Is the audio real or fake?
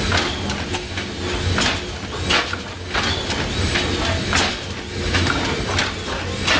real